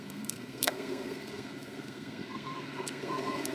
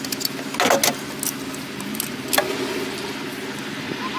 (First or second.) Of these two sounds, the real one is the second